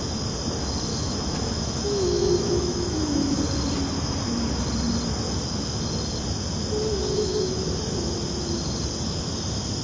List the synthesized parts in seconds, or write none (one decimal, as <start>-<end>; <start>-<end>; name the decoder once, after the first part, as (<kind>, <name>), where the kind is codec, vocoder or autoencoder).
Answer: 0.9-3.4 (autoencoder, DAC-VAE); 6.9-7.6